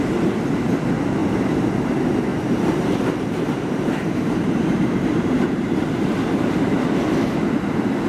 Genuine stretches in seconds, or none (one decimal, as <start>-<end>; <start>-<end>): 0.0-2.3; 6.8-8.1